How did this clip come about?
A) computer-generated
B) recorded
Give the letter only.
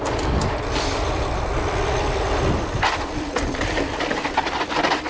B